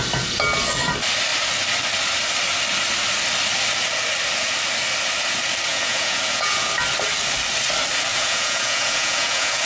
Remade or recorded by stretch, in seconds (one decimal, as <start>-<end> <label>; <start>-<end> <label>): 0.0-5.7 recorded; 5.7-6.7 remade; 6.7-8.1 recorded; 8.1-9.7 remade